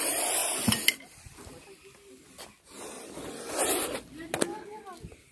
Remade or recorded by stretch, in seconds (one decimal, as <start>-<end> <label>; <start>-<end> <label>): 0.0-5.3 recorded